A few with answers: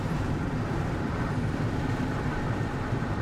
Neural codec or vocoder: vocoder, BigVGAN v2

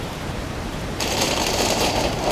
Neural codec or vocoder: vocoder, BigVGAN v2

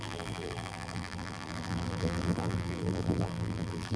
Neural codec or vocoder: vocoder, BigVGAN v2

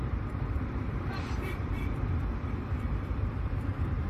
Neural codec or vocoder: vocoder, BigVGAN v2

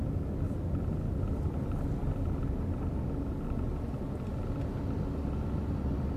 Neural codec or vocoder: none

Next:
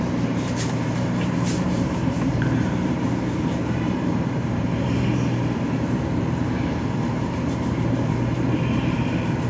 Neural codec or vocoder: vocoder, BigVGAN v2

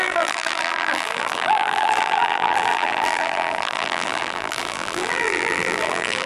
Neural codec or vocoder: vocoder, BigVGAN v2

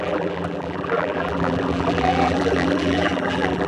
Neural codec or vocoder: vocoder, BigVGAN v2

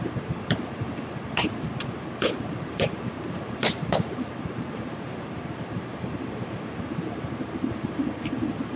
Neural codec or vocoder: vocoder, BigVGAN v2